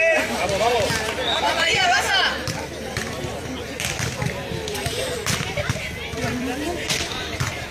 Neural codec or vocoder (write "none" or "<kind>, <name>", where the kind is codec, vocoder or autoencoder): vocoder, BigVGAN v2